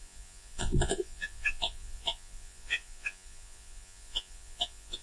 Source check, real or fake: fake